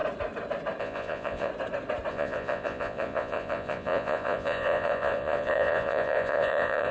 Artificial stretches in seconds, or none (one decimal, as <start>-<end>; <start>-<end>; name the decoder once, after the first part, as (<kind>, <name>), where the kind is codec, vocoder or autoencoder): 0.8-1.5 (vocoder, Vocos); 2.1-6.9